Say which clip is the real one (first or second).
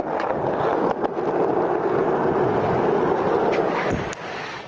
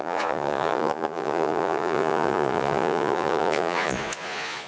first